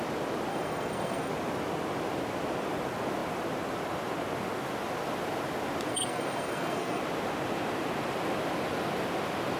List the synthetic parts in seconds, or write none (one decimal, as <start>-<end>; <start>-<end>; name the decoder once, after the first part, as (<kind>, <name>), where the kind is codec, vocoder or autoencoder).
0.5-1.3 (codec, SNAC); 5.9-7.0